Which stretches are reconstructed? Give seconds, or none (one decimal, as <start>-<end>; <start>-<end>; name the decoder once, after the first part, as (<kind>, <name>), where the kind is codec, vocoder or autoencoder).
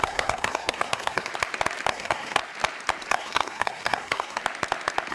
0.0-1.3 (codec, SNAC); 1.9-2.4; 3.1-4.4